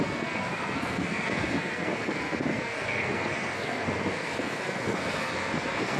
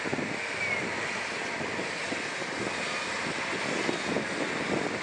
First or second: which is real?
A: second